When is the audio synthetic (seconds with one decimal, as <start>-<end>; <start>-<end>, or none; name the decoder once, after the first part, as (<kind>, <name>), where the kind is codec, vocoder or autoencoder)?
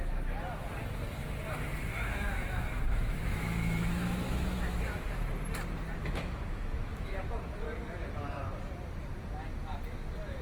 1.9-5.3 (autoencoder, DAC-VAE); 6.0-7.2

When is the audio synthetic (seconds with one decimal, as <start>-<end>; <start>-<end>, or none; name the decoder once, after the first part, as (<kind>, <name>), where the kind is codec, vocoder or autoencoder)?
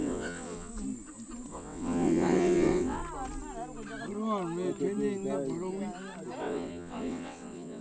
0.0-0.7 (vocoder, WaveNeXt); 1.5-3.0; 6.4-7.8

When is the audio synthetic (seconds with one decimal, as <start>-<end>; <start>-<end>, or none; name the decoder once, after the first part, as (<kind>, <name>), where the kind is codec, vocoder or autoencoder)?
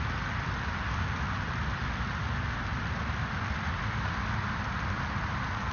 none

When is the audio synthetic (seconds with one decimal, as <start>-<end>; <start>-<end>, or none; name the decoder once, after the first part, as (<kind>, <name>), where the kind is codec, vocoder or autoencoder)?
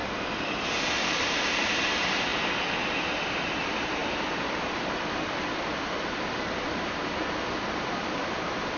0.0-4.0 (vocoder, BigVGAN v2); 4.7-5.5; 6.0-8.8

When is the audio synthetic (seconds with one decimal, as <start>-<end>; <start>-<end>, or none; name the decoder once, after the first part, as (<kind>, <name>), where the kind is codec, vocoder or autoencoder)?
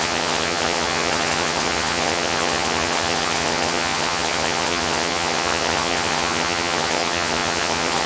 0.0-8.1 (vocoder, HiFi-GAN)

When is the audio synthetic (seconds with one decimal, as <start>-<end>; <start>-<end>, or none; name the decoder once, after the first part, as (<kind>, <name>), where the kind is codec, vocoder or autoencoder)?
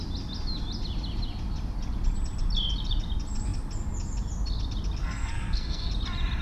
5.0-5.9 (codec, SNAC)